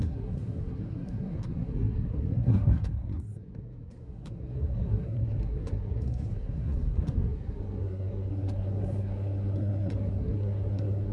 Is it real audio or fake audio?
fake